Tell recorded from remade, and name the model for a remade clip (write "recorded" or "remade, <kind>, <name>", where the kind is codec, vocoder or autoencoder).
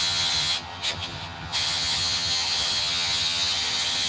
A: remade, vocoder, HiFi-GAN